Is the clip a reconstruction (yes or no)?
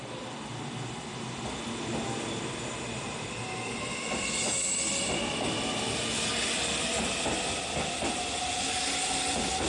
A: no